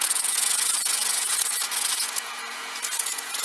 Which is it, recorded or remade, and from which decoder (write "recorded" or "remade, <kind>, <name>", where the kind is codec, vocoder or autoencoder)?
remade, vocoder, Vocos